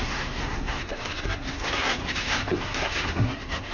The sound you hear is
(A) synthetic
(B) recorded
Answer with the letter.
A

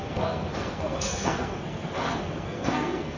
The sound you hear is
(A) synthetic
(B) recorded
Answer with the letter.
A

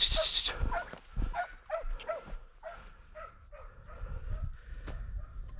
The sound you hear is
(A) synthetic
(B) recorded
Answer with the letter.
B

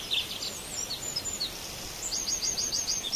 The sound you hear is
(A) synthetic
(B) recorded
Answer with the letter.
B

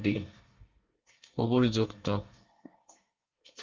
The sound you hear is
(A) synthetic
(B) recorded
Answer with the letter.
A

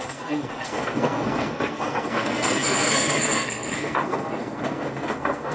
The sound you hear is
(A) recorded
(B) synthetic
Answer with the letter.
B